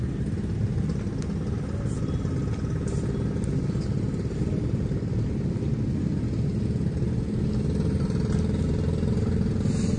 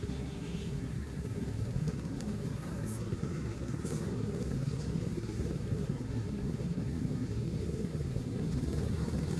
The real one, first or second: first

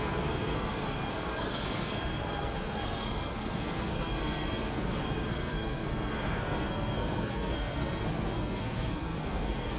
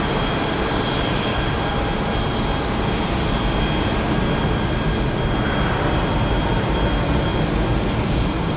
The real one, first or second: second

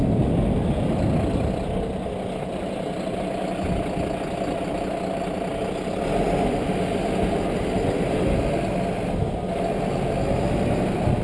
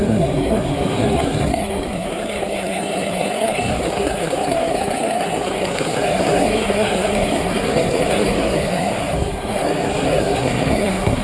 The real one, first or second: first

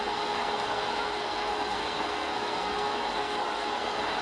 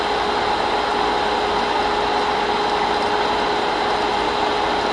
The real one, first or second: second